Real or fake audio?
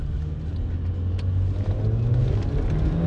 real